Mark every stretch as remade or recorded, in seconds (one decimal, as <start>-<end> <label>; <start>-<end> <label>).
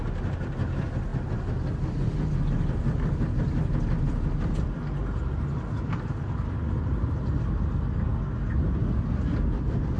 0.0-10.0 recorded